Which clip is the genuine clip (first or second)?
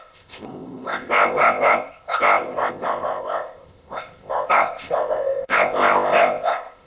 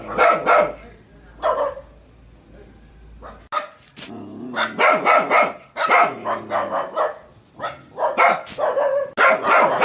second